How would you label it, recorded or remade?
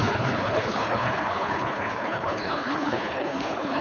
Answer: remade